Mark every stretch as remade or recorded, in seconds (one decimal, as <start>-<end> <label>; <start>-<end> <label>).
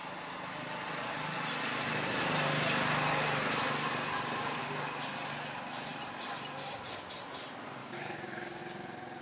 0.0-7.8 recorded; 7.8-8.6 remade; 8.6-9.2 recorded